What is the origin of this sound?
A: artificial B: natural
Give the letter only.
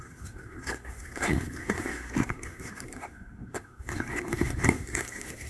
A